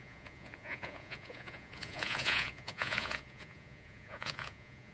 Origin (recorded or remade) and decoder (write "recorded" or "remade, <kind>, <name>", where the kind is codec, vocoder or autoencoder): remade, vocoder, Vocos